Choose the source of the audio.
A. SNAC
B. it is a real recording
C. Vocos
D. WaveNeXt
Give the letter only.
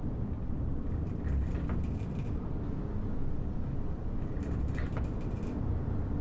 B